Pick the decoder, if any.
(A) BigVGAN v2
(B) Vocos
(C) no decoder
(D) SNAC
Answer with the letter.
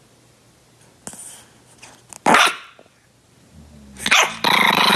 C